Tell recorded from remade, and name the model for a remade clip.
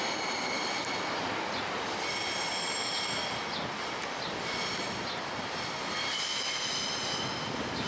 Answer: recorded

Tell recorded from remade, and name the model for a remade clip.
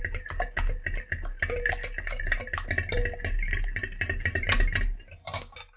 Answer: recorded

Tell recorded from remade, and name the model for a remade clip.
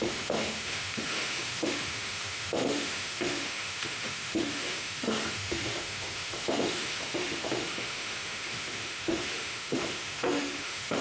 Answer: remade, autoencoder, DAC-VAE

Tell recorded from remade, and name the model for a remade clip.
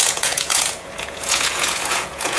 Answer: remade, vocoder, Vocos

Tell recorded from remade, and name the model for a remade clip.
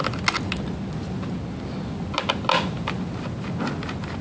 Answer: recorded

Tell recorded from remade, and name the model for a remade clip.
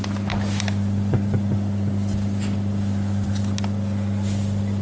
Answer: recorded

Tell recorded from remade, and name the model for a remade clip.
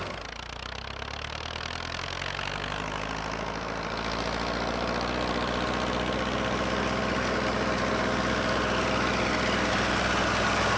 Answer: recorded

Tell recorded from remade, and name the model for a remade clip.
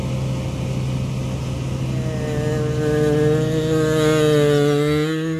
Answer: recorded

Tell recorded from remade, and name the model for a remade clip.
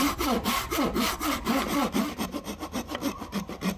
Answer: remade, vocoder, BigVGAN v2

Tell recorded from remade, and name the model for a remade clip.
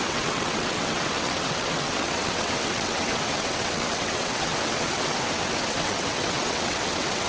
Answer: remade, vocoder, WaveNeXt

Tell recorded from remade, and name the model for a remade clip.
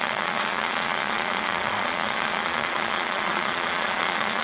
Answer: remade, vocoder, Vocos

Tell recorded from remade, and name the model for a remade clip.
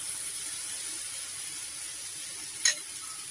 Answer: recorded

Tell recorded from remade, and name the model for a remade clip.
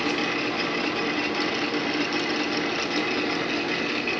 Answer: recorded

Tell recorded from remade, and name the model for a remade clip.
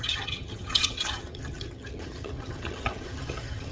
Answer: remade, vocoder, HiFi-GAN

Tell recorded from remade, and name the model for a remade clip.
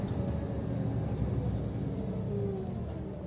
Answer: recorded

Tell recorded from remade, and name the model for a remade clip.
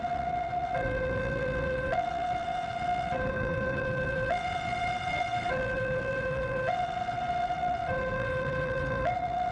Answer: remade, vocoder, WaveNeXt